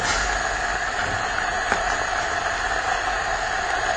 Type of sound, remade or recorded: recorded